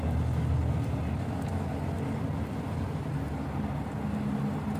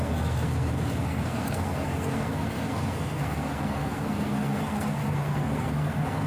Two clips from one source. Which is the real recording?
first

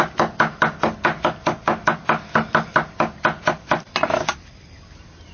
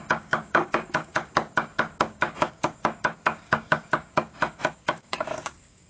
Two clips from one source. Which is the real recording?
first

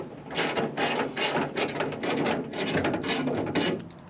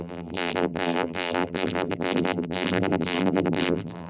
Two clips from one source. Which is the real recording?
first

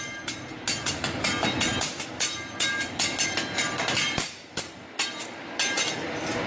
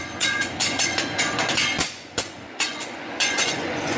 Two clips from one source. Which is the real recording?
first